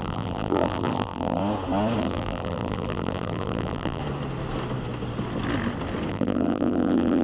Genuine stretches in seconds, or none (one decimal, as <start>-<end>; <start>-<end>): 1.4-2.0; 4.0-6.1